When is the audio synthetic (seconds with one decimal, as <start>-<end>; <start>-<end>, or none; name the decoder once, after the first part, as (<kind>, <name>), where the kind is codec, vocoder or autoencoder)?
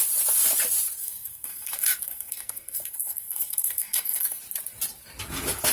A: 1.0-4.4 (codec, SNAC)